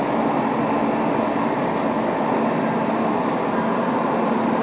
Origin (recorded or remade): recorded